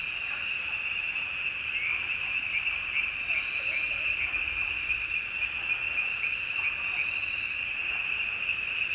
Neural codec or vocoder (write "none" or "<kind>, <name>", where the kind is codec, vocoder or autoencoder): none